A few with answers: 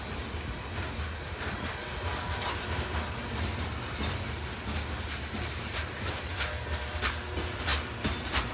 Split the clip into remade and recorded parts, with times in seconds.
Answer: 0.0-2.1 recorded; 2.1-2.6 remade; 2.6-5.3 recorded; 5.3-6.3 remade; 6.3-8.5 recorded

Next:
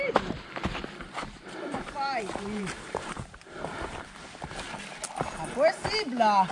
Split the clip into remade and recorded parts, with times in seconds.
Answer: 0.0-0.8 recorded; 0.8-3.7 remade; 3.7-6.5 recorded

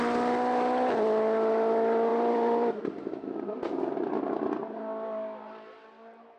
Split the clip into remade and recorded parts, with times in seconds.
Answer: 0.0-2.1 recorded; 2.1-3.4 remade; 3.4-6.4 recorded

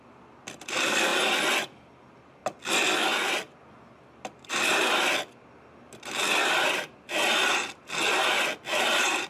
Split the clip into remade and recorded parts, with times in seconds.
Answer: 0.0-1.1 remade; 1.1-1.6 recorded; 1.6-2.4 remade; 2.4-2.9 recorded; 2.9-7.4 remade; 7.4-8.0 recorded; 8.0-9.3 remade